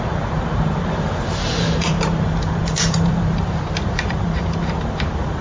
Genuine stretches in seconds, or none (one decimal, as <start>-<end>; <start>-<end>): none